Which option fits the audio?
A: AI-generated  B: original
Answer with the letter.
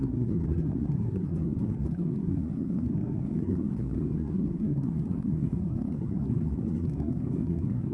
A